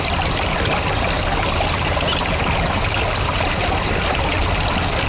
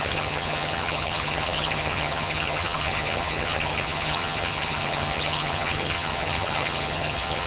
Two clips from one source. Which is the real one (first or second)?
first